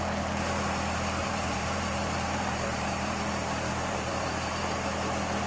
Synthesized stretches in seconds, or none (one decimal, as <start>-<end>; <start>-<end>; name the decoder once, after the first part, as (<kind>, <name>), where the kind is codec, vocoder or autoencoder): 1.2-4.5 (vocoder, BigVGAN v2)